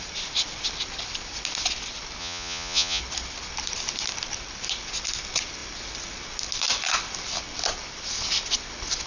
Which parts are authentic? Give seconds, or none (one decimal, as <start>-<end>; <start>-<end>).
0.0-2.2; 3.0-9.1